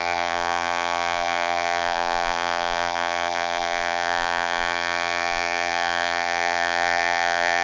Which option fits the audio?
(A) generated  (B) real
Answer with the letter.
A